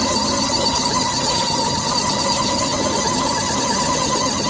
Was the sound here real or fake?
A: fake